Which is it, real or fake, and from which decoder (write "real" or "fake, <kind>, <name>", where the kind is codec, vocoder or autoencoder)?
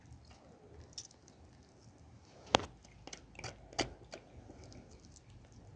real